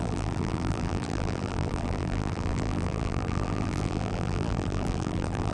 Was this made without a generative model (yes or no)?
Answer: no